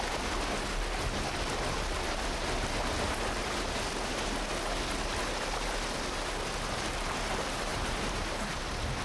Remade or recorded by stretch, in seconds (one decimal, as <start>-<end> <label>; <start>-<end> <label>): 0.0-7.7 recorded; 7.7-8.6 remade; 8.6-9.0 recorded